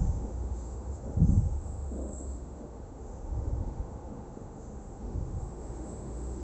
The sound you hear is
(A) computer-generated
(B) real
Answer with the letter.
A